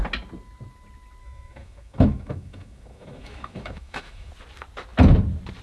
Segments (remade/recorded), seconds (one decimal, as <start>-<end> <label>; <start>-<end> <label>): 0.0-1.2 recorded; 1.2-4.3 remade; 4.3-5.6 recorded